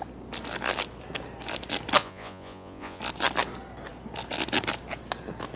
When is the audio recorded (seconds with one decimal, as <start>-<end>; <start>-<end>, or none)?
0.0-2.0; 3.0-5.6